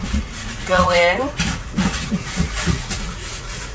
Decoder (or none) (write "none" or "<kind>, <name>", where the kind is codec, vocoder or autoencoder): vocoder, Vocos